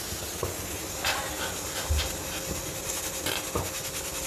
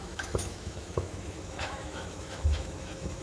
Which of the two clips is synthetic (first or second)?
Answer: second